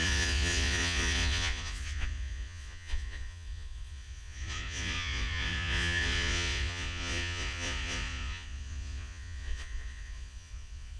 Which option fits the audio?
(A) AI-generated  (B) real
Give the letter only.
A